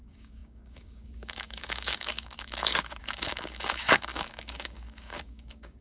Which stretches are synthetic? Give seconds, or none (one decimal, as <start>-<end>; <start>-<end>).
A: 0.0-5.8